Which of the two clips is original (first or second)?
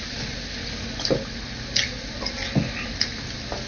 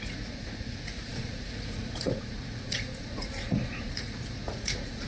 first